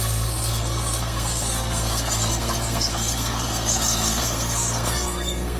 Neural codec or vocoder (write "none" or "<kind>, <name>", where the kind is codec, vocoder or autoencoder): codec, SNAC